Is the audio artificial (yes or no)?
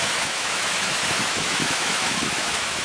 yes